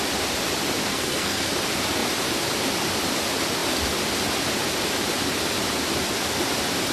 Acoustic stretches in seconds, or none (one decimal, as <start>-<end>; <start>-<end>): 0.0-0.9; 1.5-6.9